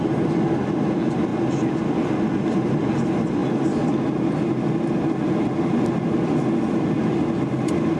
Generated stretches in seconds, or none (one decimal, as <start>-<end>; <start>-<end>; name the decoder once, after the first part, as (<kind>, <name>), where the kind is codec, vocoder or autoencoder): none